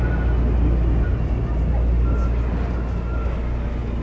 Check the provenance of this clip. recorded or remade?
recorded